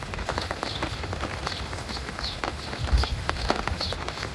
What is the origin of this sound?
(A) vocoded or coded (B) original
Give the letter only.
A